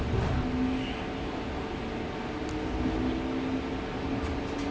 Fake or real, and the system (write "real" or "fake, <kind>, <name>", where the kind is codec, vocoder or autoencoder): real